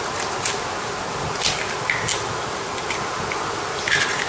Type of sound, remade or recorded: recorded